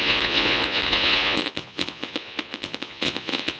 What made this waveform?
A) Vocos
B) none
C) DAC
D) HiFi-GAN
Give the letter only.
A